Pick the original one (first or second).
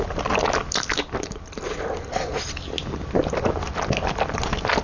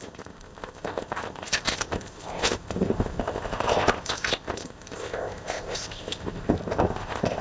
first